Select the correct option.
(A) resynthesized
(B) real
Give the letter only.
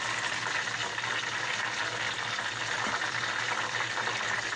B